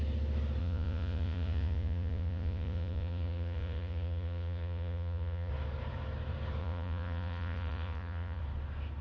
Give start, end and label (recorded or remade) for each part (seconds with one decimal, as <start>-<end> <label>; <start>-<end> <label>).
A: 0.0-0.6 recorded; 0.6-5.5 remade; 5.5-6.6 recorded; 6.6-8.4 remade; 8.4-9.0 recorded